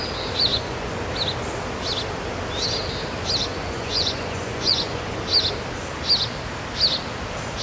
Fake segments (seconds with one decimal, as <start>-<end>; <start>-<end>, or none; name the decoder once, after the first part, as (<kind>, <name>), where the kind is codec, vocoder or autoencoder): 0.5-1.0 (vocoder, Vocos); 3.5-5.2